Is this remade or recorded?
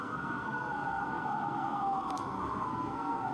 remade